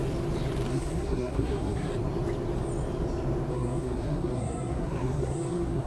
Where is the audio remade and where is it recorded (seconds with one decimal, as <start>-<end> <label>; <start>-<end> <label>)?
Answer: 0.0-0.7 recorded; 0.7-1.9 remade; 1.9-3.5 recorded; 3.5-5.9 remade